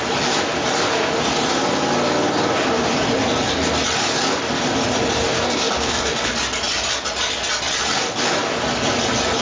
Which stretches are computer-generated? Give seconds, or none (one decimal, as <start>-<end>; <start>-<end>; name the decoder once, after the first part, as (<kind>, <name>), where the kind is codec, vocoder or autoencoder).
5.2-6.3 (codec, DAC)